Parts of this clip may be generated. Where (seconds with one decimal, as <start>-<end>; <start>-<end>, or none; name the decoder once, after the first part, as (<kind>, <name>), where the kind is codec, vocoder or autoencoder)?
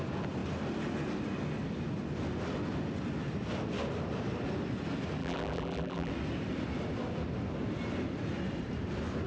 5.2-6.1 (vocoder, BigVGAN v2)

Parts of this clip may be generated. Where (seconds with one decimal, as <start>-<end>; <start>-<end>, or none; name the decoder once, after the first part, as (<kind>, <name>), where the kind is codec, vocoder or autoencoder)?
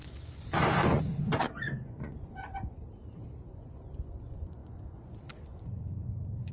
0.0-2.8 (vocoder, Vocos); 3.3-6.5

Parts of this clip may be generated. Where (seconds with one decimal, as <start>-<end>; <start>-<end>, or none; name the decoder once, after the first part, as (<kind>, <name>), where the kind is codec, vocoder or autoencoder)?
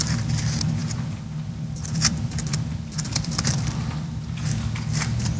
0.0-5.4 (vocoder, BigVGAN v2)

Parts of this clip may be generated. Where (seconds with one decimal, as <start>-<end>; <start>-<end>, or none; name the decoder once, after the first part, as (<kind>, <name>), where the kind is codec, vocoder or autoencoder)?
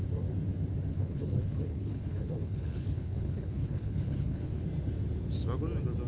0.9-4.6 (codec, HILCodec)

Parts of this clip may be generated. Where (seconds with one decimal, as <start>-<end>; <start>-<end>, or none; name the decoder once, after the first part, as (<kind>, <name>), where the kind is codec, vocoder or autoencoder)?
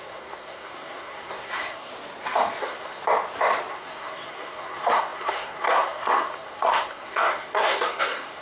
0.0-1.9 (codec, SNAC); 2.6-3.0; 3.7-8.4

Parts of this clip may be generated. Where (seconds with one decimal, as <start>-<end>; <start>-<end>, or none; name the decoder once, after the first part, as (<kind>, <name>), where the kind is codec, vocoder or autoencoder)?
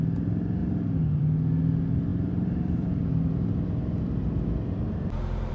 2.1-5.5 (vocoder, BigVGAN v2)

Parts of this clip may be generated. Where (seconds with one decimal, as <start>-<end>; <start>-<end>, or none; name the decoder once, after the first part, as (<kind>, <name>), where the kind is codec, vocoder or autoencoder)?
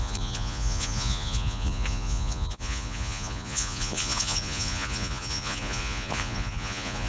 0.0-7.1 (vocoder, Vocos)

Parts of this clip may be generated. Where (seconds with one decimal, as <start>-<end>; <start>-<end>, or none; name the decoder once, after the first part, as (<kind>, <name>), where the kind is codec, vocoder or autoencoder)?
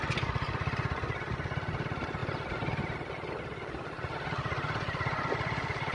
none